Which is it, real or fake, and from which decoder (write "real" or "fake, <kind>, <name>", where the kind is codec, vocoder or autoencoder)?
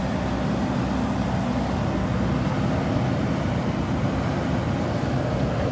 real